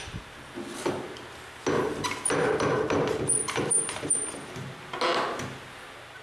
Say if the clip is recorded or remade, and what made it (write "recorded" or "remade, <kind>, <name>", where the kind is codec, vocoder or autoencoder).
recorded